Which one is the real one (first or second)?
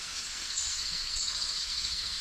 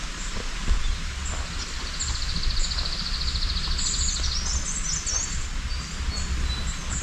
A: second